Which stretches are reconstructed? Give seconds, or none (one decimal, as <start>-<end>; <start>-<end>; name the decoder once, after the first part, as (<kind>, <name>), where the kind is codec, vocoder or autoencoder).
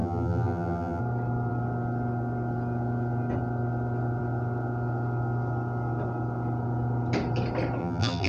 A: 0.0-1.0 (vocoder, BigVGAN v2); 7.8-8.3